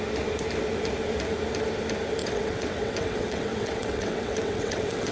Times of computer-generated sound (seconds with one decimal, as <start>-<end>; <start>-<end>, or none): 2.2-5.1